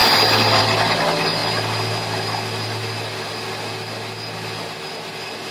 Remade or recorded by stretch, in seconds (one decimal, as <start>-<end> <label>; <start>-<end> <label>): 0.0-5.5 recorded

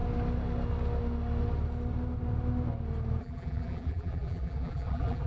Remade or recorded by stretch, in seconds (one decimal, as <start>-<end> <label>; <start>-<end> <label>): 0.0-3.2 recorded; 3.2-5.3 remade

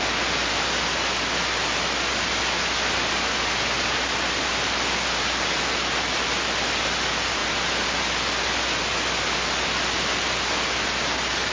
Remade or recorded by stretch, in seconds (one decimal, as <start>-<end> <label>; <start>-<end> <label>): 0.0-11.5 recorded

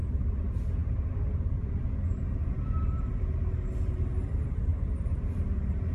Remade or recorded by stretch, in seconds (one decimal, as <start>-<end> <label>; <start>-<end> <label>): 0.0-5.9 remade

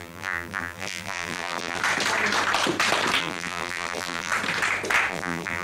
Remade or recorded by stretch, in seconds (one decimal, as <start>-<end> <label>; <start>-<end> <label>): 0.0-1.8 remade; 1.8-3.2 recorded; 3.2-4.3 remade; 4.3-5.1 recorded; 5.1-5.6 remade